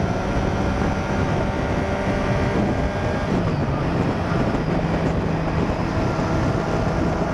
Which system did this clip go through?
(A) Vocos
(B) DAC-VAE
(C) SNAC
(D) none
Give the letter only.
D